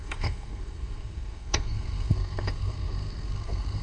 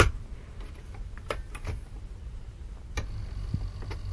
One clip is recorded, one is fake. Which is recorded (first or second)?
second